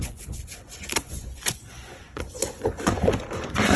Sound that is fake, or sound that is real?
fake